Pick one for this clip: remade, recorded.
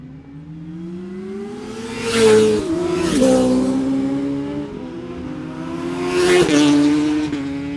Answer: recorded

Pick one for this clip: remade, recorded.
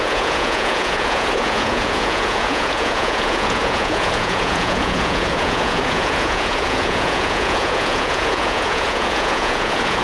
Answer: remade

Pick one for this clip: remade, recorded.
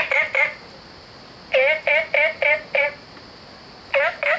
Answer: recorded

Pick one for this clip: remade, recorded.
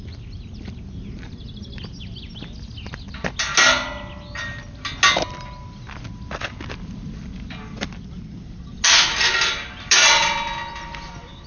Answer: recorded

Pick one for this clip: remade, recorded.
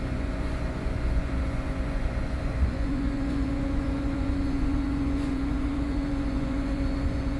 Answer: remade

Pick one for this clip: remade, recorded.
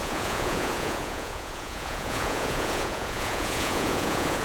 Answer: remade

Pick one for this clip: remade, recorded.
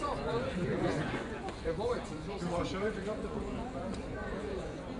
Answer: remade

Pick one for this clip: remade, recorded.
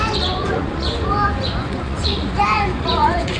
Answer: remade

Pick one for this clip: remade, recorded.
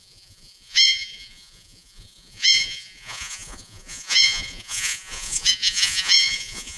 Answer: remade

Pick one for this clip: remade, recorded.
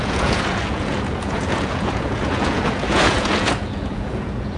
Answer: remade